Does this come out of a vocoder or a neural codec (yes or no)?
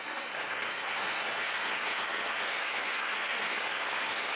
yes